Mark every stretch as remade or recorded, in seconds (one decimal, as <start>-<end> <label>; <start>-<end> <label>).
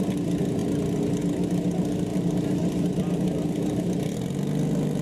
0.0-2.1 recorded; 2.1-3.8 remade; 3.8-5.0 recorded